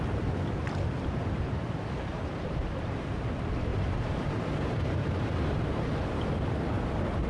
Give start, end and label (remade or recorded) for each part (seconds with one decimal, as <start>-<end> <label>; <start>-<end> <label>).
0.0-2.1 recorded; 2.1-2.6 remade; 2.6-3.7 recorded; 3.7-6.0 remade; 6.0-7.3 recorded